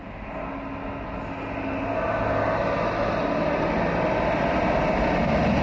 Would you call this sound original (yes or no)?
yes